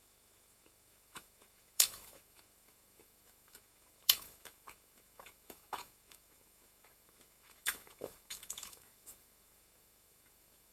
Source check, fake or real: fake